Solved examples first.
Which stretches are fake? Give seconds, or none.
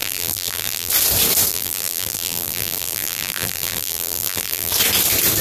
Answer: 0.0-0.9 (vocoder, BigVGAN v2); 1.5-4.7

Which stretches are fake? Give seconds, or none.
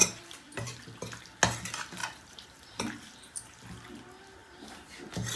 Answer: 0.0-0.8 (vocoder, BigVGAN v2); 2.0-3.6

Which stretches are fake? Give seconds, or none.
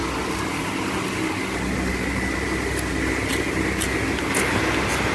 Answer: none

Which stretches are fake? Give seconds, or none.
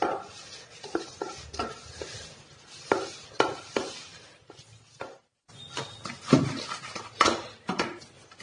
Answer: 4.1-5.7 (vocoder, BigVGAN v2)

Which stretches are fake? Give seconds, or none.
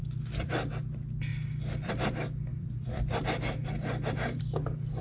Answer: 0.0-0.7 (vocoder, BigVGAN v2); 2.5-4.4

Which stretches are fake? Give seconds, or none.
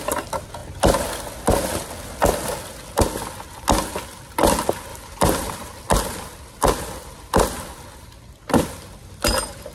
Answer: 4.9-5.9 (vocoder, BigVGAN v2)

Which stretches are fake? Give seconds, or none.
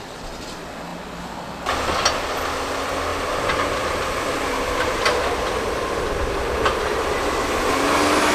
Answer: 3.1-7.7 (vocoder, BigVGAN v2)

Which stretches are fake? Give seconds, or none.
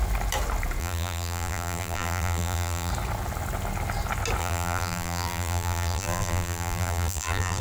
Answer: 0.8-2.9 (vocoder, BigVGAN v2); 4.4-7.6